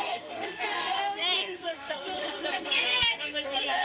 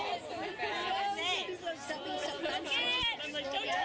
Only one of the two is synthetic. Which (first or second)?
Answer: first